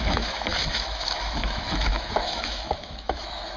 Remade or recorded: remade